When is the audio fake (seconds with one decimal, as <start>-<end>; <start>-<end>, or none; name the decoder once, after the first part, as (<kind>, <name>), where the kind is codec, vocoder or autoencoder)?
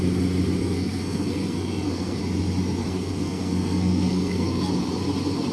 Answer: 0.6-2.2 (codec, SNAC); 2.8-4.7